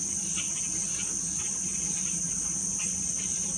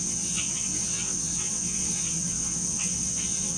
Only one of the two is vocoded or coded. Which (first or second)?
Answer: second